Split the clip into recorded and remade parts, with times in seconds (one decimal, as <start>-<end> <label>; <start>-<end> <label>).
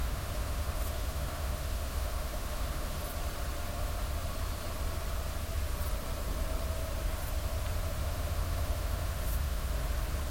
0.0-3.0 remade; 3.0-8.0 recorded; 8.0-9.7 remade; 9.7-10.3 recorded